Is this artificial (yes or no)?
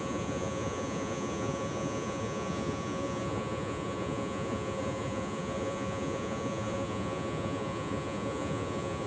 yes